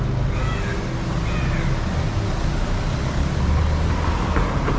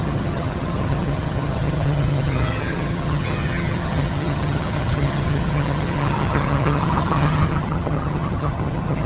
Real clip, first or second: first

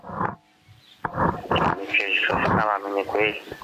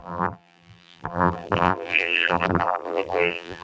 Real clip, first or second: first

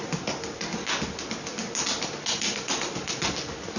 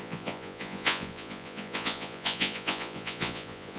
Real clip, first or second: first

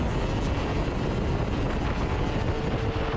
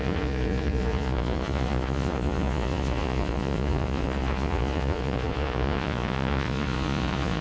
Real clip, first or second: first